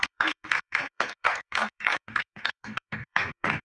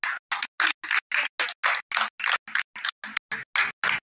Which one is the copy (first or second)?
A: first